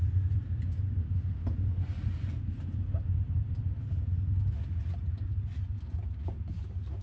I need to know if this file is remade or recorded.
recorded